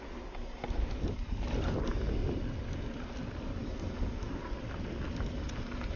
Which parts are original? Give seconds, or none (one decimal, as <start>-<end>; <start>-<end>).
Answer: 0.0-2.2; 4.6-6.0